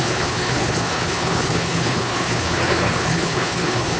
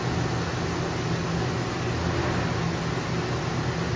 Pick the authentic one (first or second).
second